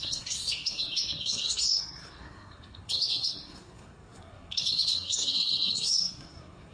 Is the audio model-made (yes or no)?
yes